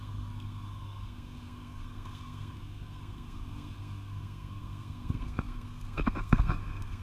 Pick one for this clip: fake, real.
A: fake